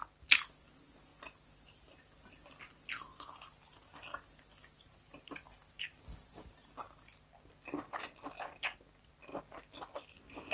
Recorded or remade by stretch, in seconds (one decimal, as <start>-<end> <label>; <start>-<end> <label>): 0.0-10.5 recorded